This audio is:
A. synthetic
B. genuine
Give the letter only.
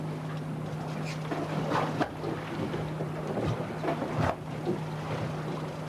B